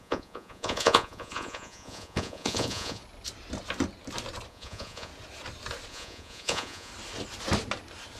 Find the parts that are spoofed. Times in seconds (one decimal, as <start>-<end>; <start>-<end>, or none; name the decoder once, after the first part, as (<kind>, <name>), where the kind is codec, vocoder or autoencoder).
0.0-3.0 (vocoder, Vocos); 4.5-5.1; 5.9-6.9